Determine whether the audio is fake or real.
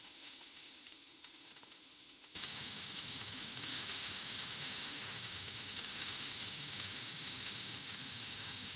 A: fake